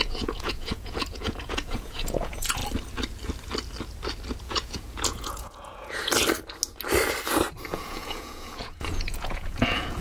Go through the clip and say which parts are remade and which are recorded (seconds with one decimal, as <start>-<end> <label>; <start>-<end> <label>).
0.0-2.6 remade; 2.6-4.4 recorded; 4.4-6.1 remade; 6.1-7.7 recorded; 7.7-10.0 remade